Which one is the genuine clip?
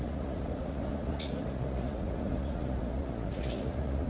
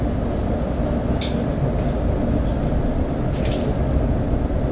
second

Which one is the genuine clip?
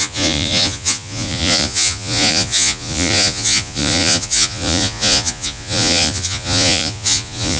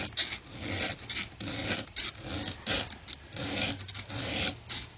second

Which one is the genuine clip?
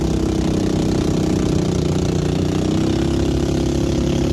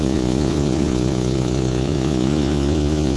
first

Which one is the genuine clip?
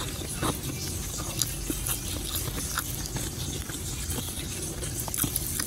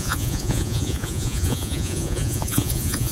first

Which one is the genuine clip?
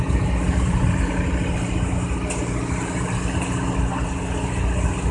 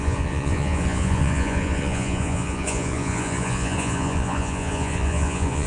first